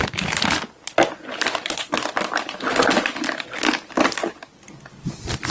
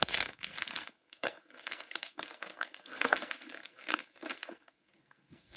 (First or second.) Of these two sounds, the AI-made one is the second